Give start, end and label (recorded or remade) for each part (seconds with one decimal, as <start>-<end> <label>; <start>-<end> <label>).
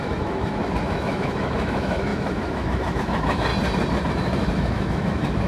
0.0-3.5 remade; 3.5-4.1 recorded; 4.1-5.5 remade